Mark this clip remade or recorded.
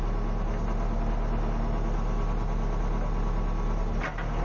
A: recorded